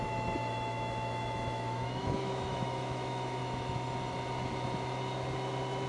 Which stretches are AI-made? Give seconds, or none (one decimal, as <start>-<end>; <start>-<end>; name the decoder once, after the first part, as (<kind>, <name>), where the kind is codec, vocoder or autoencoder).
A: 0.0-3.4 (autoencoder, DAC-VAE)